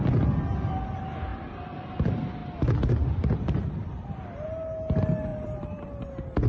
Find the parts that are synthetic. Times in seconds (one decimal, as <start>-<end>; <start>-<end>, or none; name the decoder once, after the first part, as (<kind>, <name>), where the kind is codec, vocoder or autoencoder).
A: 1.3-1.9 (vocoder, BigVGAN v2); 5.3-6.1